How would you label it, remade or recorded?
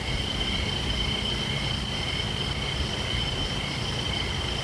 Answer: remade